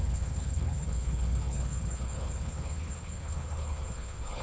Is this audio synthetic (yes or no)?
yes